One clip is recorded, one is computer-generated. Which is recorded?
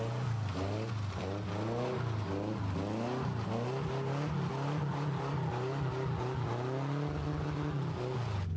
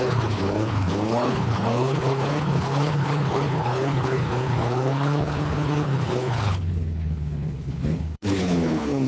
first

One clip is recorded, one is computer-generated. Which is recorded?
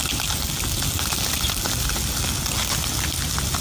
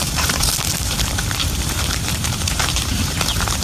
first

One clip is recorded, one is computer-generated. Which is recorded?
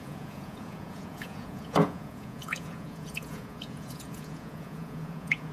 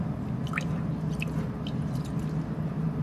second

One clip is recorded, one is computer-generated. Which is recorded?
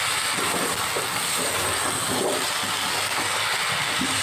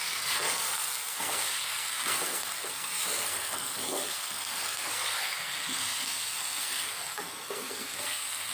first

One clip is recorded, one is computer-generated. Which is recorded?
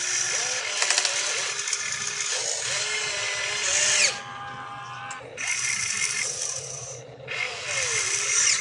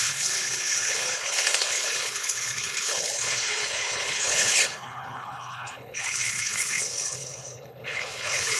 first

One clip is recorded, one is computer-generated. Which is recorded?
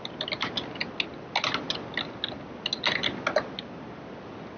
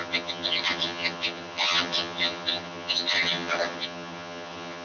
first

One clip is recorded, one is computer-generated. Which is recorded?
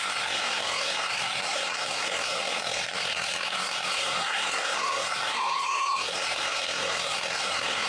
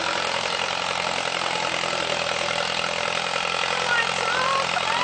second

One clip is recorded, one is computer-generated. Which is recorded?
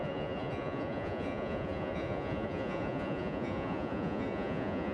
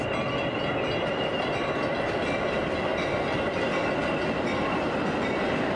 second